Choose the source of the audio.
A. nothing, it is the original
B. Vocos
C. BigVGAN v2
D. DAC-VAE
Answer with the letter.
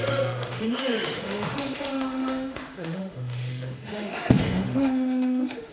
D